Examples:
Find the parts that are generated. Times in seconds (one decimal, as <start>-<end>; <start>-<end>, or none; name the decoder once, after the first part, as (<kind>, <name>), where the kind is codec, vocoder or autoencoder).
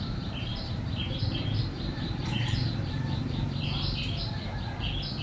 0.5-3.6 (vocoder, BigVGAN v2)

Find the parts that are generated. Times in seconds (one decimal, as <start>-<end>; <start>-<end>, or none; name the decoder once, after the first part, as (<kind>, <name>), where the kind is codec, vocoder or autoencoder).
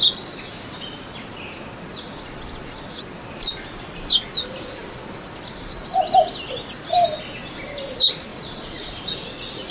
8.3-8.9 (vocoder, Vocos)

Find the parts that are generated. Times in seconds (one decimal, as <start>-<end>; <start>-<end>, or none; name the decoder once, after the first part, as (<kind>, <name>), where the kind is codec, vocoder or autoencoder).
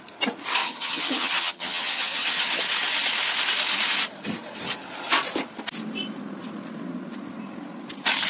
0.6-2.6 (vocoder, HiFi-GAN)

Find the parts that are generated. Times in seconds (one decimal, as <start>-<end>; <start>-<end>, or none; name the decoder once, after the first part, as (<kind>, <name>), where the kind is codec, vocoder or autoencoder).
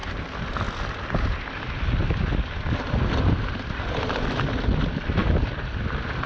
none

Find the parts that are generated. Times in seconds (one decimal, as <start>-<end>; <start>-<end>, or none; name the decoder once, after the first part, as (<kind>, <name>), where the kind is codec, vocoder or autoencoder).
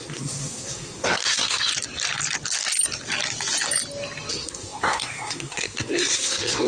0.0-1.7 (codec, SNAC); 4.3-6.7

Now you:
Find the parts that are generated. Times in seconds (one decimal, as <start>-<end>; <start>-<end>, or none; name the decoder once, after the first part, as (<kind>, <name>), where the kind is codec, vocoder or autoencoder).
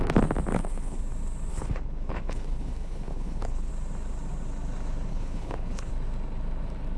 0.5-1.0 (codec, HILCodec); 1.5-3.7; 5.1-5.9